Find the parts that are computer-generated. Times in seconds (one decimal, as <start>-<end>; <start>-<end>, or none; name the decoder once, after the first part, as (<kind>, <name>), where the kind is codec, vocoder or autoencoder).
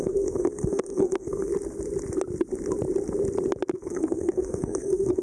0.0-1.5 (codec, SNAC); 3.7-5.2